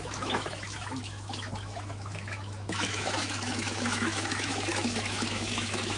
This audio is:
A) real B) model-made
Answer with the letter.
B